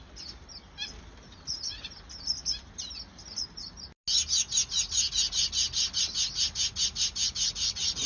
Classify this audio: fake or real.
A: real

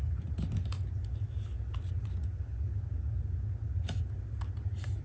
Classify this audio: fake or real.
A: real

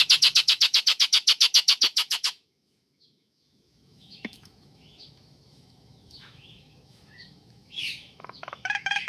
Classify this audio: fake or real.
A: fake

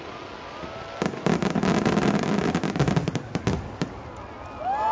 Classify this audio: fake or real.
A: real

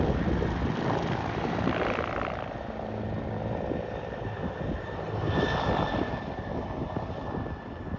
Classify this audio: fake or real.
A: real